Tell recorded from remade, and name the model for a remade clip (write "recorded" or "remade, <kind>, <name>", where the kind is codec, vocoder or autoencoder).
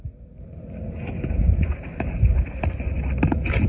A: recorded